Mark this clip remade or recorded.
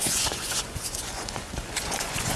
remade